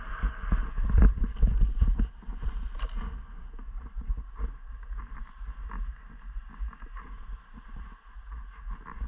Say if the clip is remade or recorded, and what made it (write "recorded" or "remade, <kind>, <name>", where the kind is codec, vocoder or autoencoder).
recorded